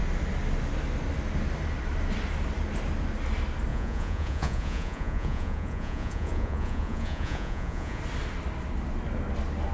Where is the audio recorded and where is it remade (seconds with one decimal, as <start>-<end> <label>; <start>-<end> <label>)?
0.0-3.7 recorded; 3.7-8.0 remade; 8.0-9.7 recorded